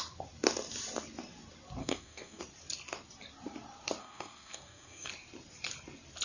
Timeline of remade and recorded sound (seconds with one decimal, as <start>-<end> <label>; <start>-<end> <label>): 0.0-1.8 recorded; 1.8-2.4 remade; 2.4-4.0 recorded; 4.0-5.1 remade; 5.1-6.2 recorded